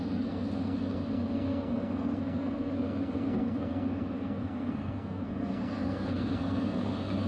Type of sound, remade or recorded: remade